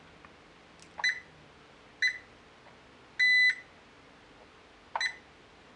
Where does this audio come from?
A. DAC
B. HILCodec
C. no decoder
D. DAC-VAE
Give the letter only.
C